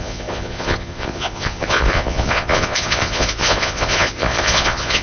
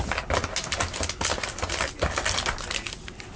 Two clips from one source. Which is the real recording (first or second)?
second